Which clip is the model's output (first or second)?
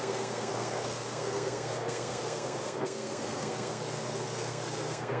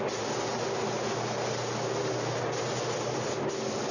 first